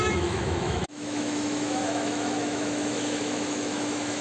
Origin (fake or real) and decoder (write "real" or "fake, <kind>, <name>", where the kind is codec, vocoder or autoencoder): fake, autoencoder, DAC-VAE